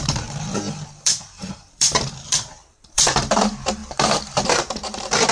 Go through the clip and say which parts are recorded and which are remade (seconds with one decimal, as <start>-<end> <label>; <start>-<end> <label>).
0.0-5.3 remade